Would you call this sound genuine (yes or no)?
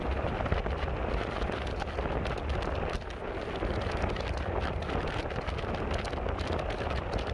yes